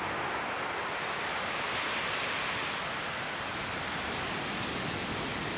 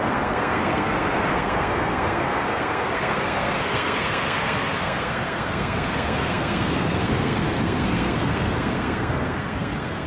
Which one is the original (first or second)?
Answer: first